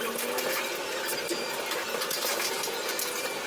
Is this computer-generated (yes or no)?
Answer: no